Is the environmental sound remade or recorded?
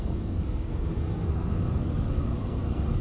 remade